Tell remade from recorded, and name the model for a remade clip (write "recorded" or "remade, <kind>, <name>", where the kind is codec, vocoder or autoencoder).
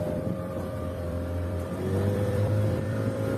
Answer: remade, vocoder, BigVGAN v2